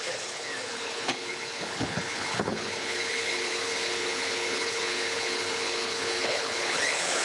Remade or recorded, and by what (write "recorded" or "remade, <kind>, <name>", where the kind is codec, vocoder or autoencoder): remade, codec, HILCodec